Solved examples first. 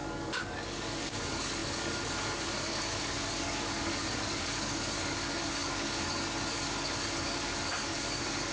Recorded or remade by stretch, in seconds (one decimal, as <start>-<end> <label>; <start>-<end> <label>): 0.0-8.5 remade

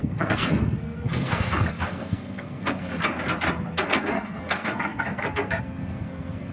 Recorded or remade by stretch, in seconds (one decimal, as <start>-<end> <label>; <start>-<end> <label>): 0.0-2.9 remade; 2.9-3.7 recorded; 3.7-6.5 remade

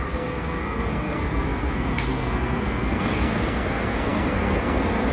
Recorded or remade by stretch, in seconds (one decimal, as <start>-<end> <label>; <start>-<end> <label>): 0.0-5.1 remade

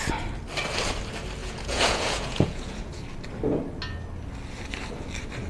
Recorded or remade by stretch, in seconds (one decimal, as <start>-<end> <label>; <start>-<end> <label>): 0.0-1.4 recorded; 1.4-3.0 remade; 3.0-5.5 recorded

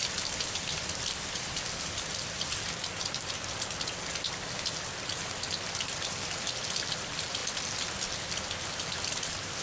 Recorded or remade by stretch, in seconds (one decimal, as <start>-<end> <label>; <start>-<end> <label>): 0.0-9.6 recorded

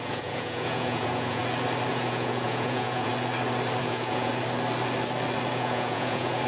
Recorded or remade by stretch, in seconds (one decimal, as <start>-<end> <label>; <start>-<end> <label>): 0.0-1.4 remade; 1.4-1.9 recorded; 1.9-3.1 remade; 3.1-3.8 recorded; 3.8-4.3 remade; 4.3-5.5 recorded; 5.5-6.5 remade

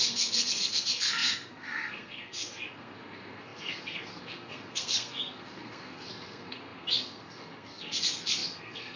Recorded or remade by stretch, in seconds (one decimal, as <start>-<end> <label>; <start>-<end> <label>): 0.0-9.0 remade